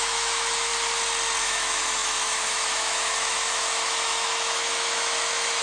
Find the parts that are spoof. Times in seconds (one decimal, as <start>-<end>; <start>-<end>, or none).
0.0-0.7; 1.4-5.6

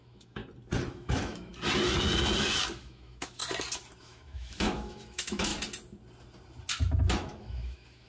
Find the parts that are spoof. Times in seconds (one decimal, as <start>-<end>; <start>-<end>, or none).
0.0-0.4; 0.9-1.5; 2.8-3.4; 4.0-5.5; 7.0-8.1

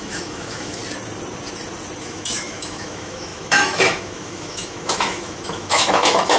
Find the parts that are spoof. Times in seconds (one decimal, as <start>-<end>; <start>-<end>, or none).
0.0-0.8; 2.0-6.4

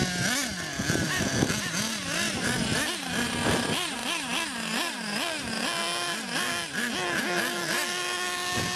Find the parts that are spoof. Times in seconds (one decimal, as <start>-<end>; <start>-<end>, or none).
none

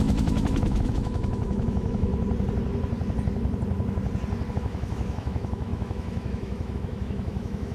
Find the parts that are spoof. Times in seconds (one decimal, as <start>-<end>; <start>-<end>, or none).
0.0-2.1; 4.5-7.7